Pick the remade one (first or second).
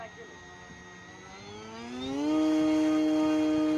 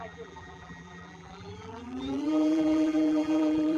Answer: second